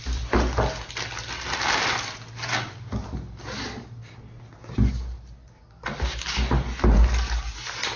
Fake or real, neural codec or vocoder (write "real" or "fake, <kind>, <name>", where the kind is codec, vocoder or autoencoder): real